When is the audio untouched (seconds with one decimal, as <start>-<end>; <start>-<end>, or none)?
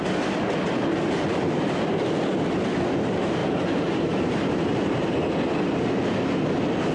0.0-3.4; 4.9-6.9